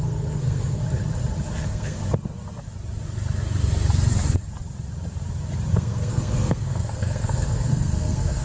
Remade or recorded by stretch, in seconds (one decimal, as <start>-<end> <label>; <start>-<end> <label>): 0.0-0.8 remade; 0.8-1.5 recorded; 1.5-2.0 remade; 2.0-5.7 recorded; 5.7-8.4 remade